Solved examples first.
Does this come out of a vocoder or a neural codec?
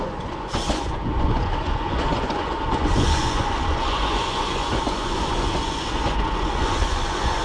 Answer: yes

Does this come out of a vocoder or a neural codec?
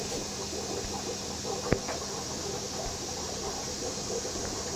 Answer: no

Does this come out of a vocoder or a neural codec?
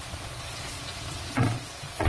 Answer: yes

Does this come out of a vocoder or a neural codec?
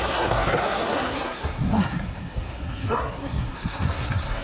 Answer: yes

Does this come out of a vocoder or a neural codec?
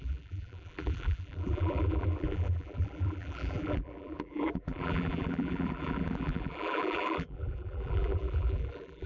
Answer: yes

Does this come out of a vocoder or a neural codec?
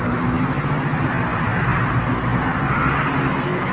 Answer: no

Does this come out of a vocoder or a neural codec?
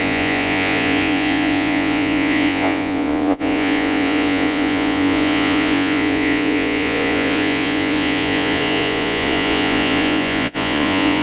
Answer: yes